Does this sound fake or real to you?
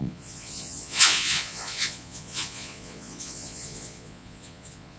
fake